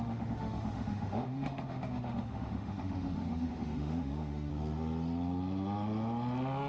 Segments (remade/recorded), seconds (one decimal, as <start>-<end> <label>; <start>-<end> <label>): 0.0-4.5 remade; 4.5-6.7 recorded

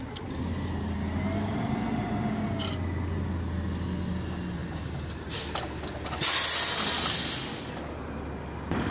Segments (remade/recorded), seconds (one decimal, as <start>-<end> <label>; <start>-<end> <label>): 0.0-8.9 recorded